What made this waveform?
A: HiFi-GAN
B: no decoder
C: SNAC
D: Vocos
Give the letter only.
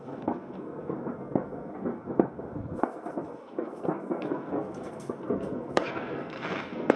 C